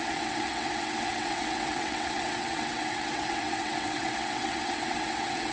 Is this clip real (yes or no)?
no